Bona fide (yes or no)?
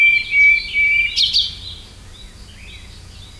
yes